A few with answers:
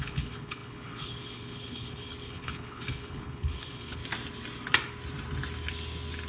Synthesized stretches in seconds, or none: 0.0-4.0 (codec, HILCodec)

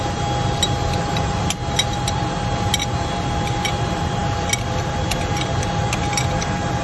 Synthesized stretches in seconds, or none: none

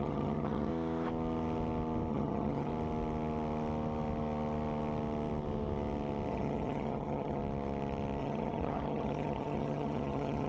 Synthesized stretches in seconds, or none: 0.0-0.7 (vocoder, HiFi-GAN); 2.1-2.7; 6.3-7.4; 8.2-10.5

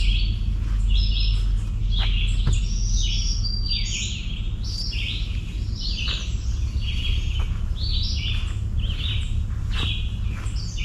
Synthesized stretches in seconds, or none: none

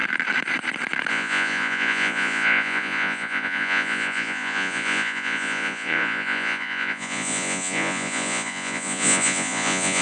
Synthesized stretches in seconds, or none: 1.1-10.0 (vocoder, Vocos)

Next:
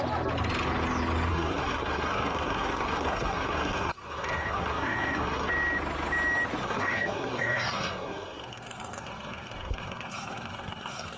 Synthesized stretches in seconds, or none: 1.3-5.5 (codec, SNAC); 6.6-11.2

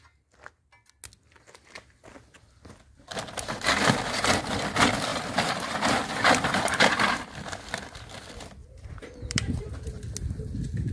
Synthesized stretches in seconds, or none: 5.1-6.9 (vocoder, BigVGAN v2); 8.6-9.7

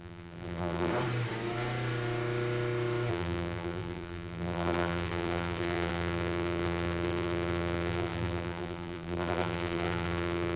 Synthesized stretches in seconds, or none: 0.0-0.9 (vocoder, BigVGAN v2); 3.1-10.6